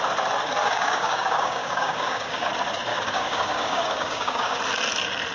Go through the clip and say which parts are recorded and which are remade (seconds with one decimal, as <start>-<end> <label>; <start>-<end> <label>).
0.0-0.6 recorded; 0.6-2.5 remade; 2.5-2.9 recorded; 2.9-4.6 remade; 4.6-5.3 recorded